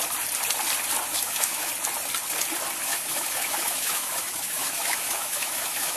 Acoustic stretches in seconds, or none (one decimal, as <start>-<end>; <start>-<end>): 0.0-1.1; 1.7-2.9